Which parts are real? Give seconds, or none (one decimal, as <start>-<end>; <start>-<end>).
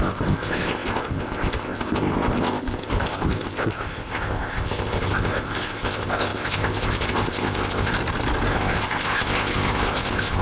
7.9-8.5